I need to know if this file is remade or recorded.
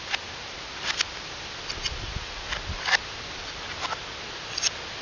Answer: recorded